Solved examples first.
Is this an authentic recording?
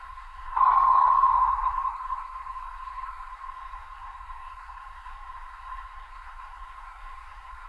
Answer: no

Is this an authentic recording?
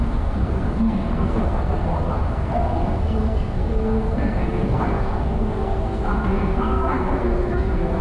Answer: no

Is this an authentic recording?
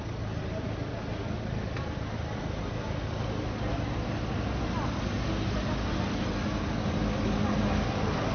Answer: yes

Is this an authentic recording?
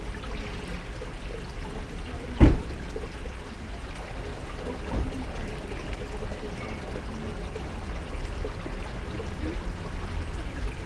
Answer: yes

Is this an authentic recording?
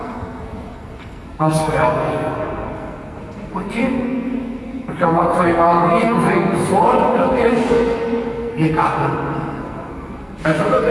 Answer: no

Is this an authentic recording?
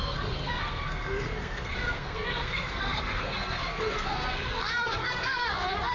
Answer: no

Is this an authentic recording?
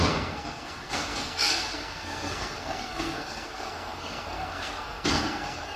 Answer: no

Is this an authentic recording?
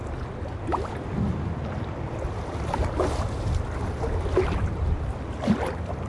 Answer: yes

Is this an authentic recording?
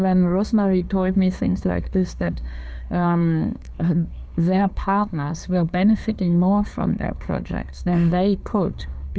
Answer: no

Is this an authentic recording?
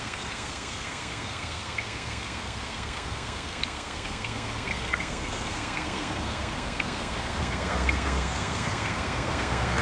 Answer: no